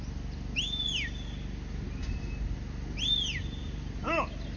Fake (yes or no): no